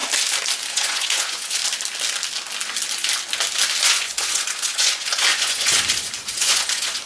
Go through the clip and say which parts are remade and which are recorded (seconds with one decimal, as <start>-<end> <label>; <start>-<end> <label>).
0.0-0.7 recorded; 0.7-1.6 remade; 1.6-3.8 recorded; 3.8-7.1 remade